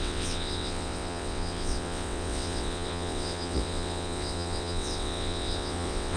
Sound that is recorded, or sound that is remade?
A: remade